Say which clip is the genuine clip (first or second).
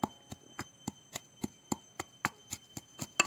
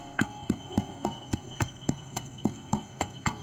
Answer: first